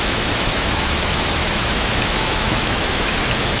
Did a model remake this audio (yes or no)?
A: yes